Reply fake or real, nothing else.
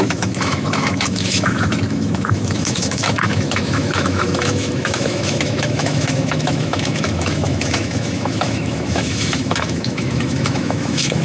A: fake